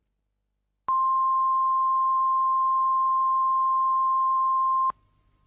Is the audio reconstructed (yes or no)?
no